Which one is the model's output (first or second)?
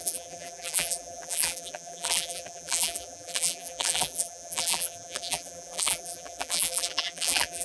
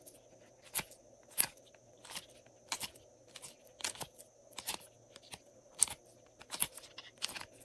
first